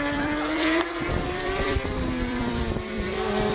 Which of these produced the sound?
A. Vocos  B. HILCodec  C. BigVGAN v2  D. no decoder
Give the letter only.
C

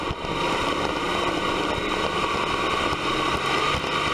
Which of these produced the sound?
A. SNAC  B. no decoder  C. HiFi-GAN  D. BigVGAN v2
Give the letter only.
B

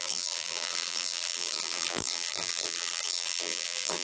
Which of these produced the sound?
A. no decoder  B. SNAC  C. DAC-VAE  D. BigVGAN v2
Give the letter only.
D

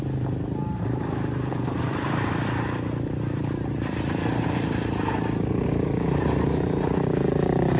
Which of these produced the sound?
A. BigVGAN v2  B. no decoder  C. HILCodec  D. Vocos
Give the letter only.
A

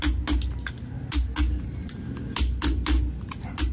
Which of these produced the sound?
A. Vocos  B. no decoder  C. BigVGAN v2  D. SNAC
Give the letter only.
B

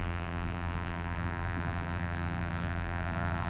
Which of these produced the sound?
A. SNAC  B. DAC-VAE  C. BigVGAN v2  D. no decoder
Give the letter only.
C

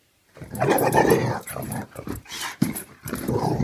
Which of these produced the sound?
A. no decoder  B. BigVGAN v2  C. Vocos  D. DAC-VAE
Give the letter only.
B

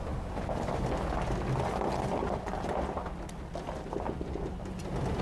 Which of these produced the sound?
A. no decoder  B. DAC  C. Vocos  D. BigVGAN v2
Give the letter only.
A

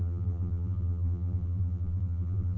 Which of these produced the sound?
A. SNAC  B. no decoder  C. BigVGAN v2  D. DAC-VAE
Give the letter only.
C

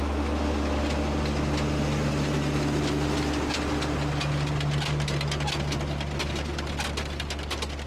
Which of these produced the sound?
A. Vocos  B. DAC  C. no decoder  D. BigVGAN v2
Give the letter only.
C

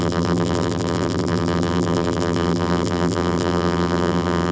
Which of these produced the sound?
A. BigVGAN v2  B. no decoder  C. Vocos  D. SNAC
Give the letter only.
A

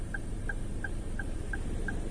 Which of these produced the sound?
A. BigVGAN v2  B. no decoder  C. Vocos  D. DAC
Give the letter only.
A